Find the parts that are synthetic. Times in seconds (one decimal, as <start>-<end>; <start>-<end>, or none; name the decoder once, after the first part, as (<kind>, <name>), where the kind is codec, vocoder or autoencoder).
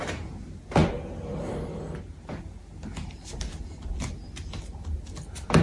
none